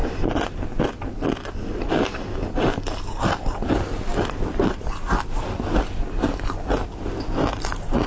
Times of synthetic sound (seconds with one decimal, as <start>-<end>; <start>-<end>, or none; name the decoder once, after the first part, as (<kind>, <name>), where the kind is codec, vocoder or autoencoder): none